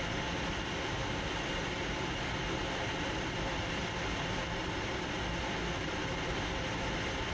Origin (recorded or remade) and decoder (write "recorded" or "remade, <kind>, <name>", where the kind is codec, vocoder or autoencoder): recorded